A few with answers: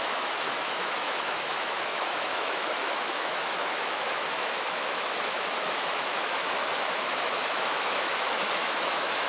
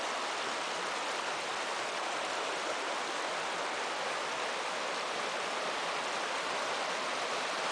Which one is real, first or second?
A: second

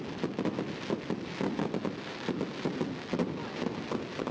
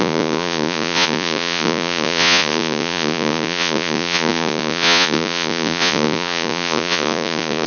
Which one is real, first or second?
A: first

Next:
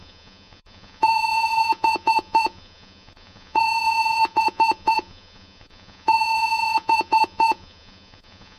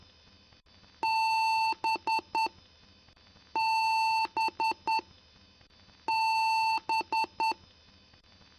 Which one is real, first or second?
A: second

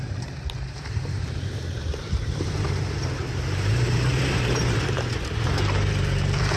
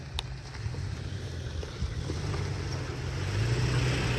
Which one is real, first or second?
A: second